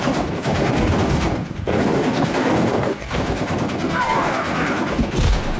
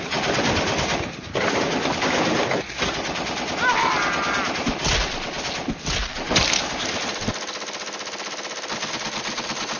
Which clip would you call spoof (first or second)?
first